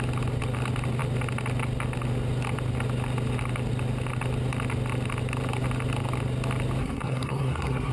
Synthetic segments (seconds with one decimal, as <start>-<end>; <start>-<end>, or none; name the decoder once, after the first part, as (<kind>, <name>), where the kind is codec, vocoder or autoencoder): 6.8-7.9 (codec, SNAC)